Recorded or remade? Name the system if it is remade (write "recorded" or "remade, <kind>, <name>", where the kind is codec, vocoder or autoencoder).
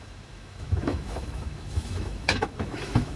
remade, autoencoder, DAC-VAE